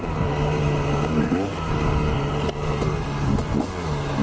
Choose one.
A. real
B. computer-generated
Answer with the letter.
B